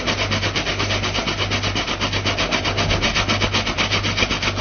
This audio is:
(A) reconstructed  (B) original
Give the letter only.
A